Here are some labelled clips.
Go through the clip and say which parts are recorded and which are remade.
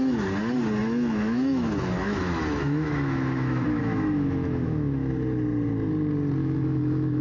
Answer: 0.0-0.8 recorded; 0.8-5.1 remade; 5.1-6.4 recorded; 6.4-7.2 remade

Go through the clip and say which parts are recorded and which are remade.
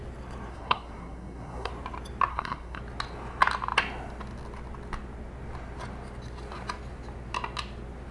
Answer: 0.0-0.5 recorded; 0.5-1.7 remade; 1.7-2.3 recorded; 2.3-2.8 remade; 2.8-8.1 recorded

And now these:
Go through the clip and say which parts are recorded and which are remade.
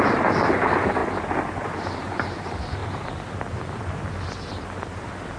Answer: 0.0-5.4 recorded